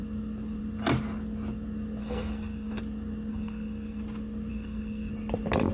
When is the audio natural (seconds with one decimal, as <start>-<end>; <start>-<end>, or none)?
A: 0.0-2.0; 2.8-3.3; 4.0-4.5; 5.1-5.7